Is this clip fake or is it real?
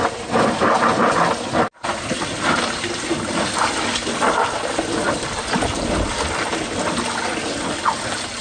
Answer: real